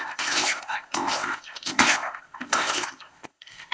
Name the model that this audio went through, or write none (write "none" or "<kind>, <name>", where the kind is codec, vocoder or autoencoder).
codec, ZipCodec